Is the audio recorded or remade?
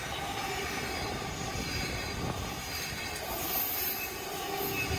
recorded